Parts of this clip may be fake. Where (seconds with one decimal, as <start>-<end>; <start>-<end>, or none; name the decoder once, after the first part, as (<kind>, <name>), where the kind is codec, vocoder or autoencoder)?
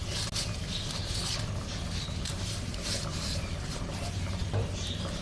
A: none